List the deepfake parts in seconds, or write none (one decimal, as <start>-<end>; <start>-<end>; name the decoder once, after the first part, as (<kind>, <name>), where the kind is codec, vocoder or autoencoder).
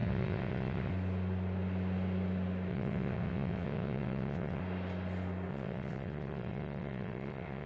0.0-0.9 (vocoder, WaveNeXt); 2.7-4.6; 5.5-7.7